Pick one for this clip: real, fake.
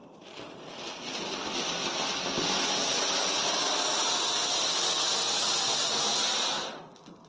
real